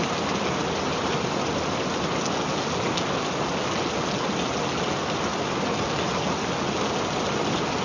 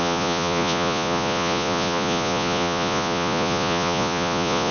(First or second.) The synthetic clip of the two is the second